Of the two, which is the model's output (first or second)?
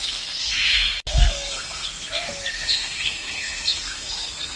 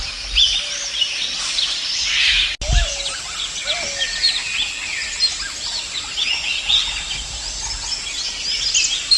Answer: first